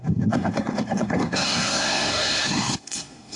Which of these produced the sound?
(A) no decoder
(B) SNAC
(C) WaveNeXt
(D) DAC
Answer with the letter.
B